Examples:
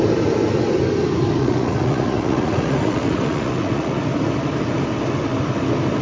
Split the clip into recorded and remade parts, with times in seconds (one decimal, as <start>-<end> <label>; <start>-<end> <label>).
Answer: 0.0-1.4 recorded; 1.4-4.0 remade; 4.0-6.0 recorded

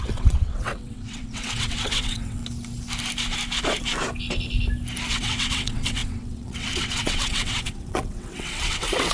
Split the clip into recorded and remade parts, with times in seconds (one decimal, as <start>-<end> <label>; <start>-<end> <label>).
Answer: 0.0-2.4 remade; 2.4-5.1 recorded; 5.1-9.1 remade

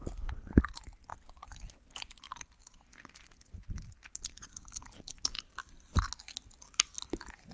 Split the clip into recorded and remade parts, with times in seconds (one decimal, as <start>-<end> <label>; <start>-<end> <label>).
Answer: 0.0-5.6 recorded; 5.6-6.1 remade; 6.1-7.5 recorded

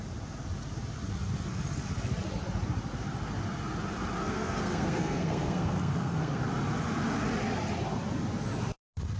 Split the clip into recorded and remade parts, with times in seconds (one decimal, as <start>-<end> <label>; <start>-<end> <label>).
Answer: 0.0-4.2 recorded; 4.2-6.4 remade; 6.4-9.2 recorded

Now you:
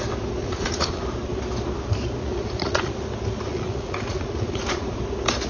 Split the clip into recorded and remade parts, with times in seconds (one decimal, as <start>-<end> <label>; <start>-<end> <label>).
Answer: 0.0-0.4 recorded; 0.4-1.0 remade; 1.0-2.2 recorded; 2.2-2.9 remade; 2.9-3.5 recorded; 3.5-5.0 remade; 5.0-5.5 recorded

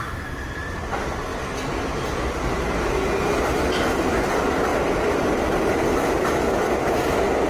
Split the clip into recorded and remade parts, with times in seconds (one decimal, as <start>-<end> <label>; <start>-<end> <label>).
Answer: 0.0-7.5 recorded

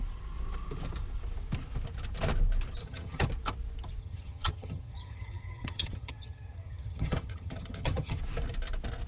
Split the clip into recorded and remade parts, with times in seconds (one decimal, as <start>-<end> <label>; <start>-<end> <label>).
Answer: 0.0-2.8 recorded; 2.8-3.3 remade; 3.3-4.0 recorded; 4.0-8.2 remade; 8.2-9.1 recorded

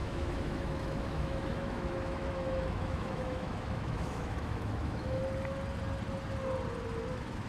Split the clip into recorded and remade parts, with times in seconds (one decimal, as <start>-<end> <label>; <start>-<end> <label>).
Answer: 0.0-5.2 remade; 5.2-7.1 recorded; 7.1-7.5 remade